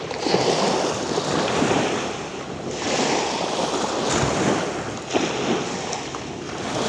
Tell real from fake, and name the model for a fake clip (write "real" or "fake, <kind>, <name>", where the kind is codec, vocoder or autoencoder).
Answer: real